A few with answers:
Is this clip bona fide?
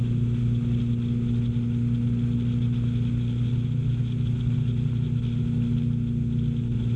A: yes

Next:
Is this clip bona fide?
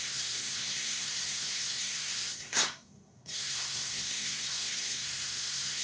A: no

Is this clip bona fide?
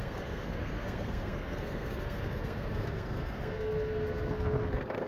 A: no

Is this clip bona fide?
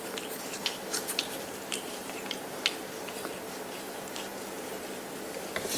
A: yes